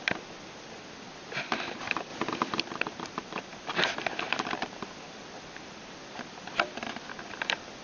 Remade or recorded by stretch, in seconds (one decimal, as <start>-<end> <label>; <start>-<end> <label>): 0.0-2.1 remade; 2.1-2.6 recorded; 2.6-7.8 remade